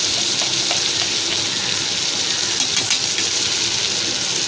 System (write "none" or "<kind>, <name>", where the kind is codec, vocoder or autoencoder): none